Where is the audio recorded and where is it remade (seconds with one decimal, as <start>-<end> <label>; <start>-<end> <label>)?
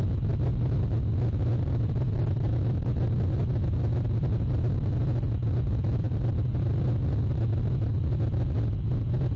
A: 0.0-9.4 recorded